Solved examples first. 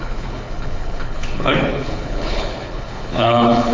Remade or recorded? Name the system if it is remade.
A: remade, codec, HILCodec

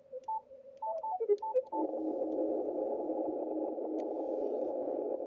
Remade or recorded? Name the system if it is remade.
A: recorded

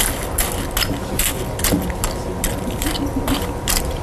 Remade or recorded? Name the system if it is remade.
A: recorded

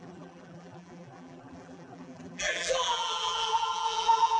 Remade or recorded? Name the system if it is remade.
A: remade, vocoder, BigVGAN v2